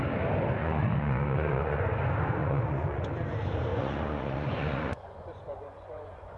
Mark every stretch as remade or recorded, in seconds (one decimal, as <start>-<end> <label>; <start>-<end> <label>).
0.0-0.6 recorded; 0.6-1.8 remade; 1.8-2.4 recorded; 2.4-3.1 remade; 3.1-3.7 recorded; 3.7-6.4 remade